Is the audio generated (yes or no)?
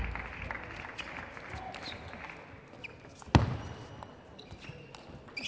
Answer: no